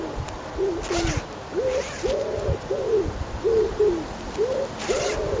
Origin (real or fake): real